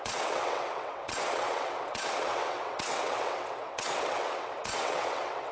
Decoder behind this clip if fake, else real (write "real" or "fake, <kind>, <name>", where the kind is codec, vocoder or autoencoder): fake, vocoder, WaveNeXt